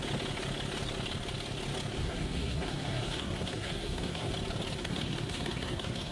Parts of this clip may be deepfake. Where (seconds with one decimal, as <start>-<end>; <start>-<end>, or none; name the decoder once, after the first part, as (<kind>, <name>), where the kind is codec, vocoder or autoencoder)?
2.0-4.3 (codec, SNAC); 4.8-6.1